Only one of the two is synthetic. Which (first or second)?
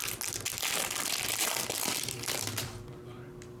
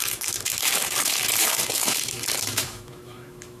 second